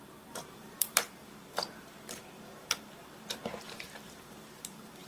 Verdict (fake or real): fake